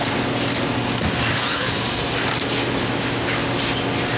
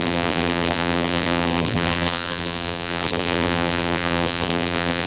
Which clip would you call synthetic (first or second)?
second